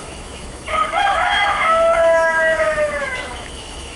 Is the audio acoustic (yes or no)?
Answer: no